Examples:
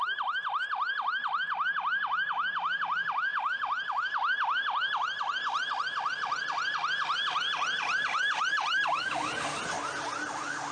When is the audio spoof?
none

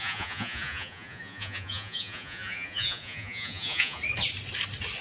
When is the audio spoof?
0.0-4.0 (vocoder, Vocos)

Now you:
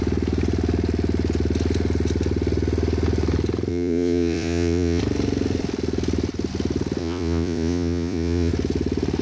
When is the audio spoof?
3.7-5.0 (vocoder, Vocos); 7.0-8.5

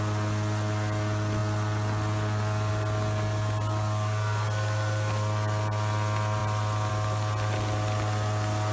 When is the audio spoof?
none

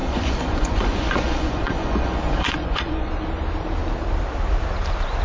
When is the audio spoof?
0.0-3.1 (vocoder, Vocos)

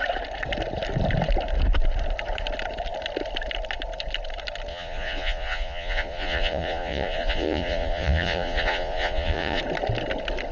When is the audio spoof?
4.7-9.6 (vocoder, Vocos)